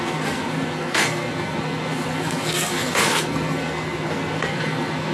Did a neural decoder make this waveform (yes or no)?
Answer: yes